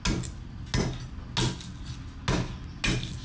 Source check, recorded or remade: recorded